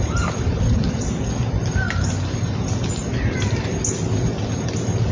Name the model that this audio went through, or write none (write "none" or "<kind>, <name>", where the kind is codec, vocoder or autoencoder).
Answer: none